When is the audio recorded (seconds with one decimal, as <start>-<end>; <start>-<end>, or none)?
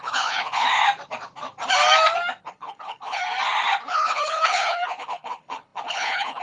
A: 0.8-2.4; 3.2-3.9